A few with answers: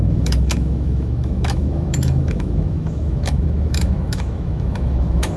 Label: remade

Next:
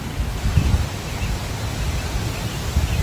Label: recorded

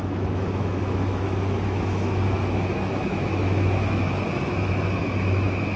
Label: remade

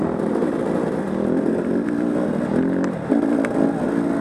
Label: remade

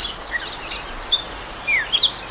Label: recorded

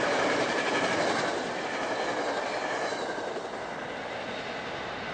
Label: recorded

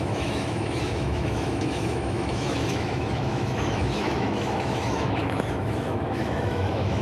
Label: remade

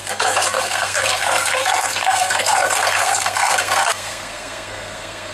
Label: remade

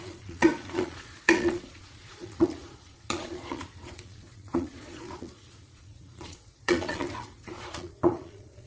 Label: remade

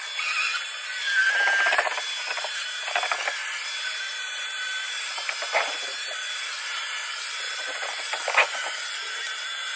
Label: recorded